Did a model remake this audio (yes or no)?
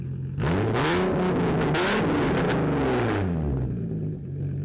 no